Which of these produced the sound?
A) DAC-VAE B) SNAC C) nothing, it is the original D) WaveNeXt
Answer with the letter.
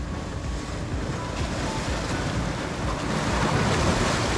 C